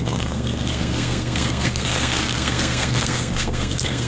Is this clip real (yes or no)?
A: no